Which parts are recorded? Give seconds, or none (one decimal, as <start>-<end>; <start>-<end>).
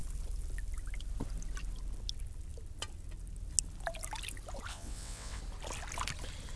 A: 0.0-4.7; 5.4-6.6